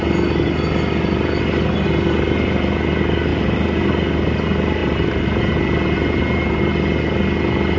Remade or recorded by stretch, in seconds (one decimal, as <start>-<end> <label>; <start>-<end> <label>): 0.0-3.3 recorded; 3.3-3.9 remade; 3.9-4.8 recorded; 4.8-6.6 remade; 6.6-7.8 recorded